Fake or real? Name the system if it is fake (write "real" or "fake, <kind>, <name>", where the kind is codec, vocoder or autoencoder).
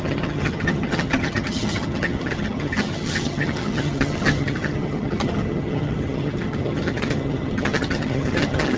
fake, vocoder, HiFi-GAN